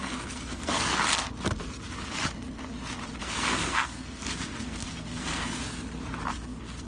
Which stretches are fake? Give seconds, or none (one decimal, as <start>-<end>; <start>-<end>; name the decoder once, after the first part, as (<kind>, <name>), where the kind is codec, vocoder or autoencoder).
0.0-0.9 (codec, SNAC); 3.2-5.6; 6.3-6.9